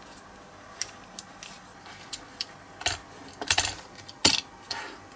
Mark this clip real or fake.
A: real